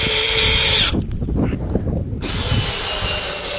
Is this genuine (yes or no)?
yes